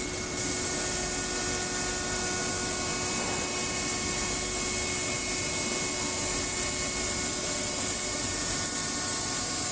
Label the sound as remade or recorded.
recorded